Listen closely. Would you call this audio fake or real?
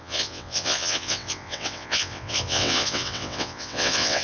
fake